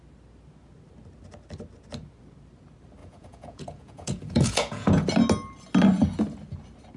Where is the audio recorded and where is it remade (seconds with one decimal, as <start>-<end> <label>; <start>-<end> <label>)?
0.0-3.0 recorded; 3.0-5.1 remade; 5.1-7.0 recorded